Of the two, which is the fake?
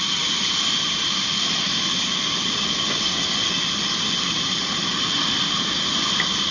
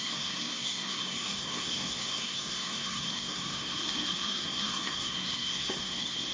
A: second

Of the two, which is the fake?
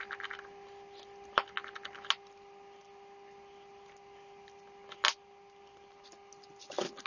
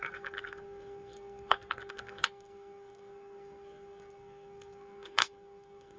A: second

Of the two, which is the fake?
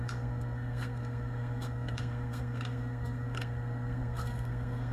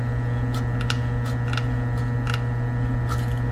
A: first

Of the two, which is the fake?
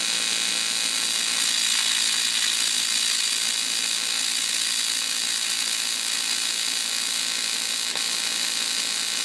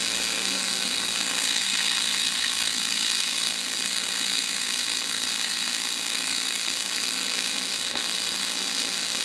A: second